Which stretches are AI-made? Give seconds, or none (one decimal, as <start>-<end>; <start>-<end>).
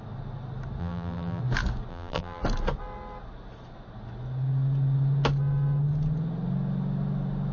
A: 0.8-1.4; 1.9-2.4